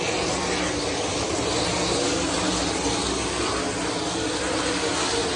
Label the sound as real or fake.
real